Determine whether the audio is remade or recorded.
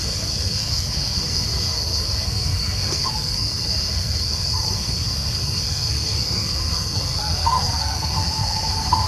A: remade